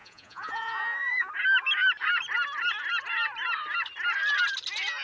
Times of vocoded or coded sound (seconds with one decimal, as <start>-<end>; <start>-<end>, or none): 0.0-1.3